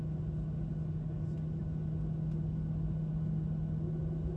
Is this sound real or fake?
real